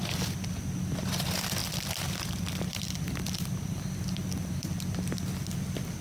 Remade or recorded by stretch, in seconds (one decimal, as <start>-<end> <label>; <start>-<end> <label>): 0.0-1.6 recorded; 1.6-4.5 remade; 4.5-6.0 recorded